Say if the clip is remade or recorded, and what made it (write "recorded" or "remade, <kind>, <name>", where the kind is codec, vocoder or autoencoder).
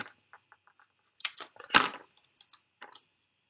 remade, vocoder, BigVGAN v2